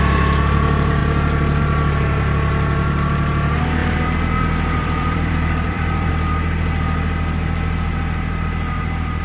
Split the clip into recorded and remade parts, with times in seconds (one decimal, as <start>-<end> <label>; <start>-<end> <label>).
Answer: 0.0-1.0 recorded; 1.0-1.6 remade; 1.6-3.8 recorded; 3.8-6.1 remade; 6.1-9.2 recorded